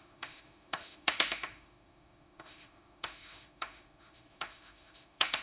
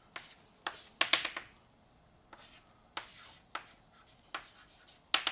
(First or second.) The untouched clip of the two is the second